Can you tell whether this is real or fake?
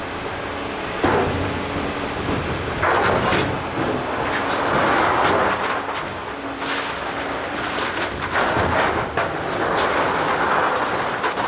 real